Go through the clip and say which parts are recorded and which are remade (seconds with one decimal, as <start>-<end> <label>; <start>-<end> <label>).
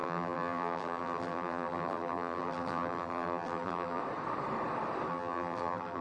0.0-4.0 remade; 4.0-5.1 recorded; 5.1-6.0 remade